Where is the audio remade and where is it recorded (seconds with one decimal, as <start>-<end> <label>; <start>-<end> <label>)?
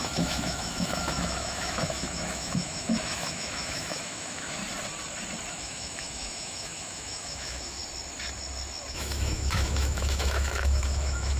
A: 0.0-4.6 remade; 4.6-5.5 recorded; 5.5-7.8 remade; 7.8-8.9 recorded; 8.9-11.4 remade